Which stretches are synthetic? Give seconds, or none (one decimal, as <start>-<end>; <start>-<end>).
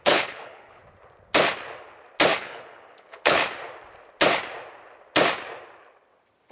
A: 0.0-0.8; 2.3-3.4